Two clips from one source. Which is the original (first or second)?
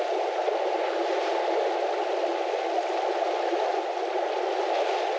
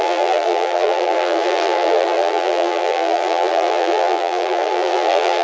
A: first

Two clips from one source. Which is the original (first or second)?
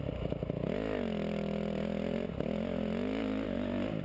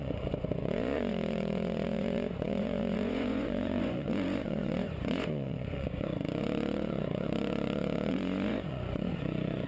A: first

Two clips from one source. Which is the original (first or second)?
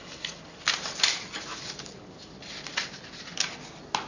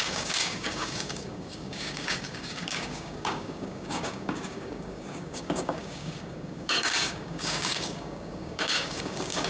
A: first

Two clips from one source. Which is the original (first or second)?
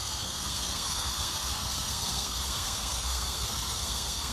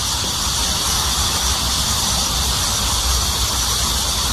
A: second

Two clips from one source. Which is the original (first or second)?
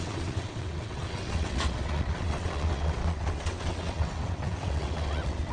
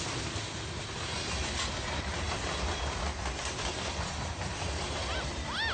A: second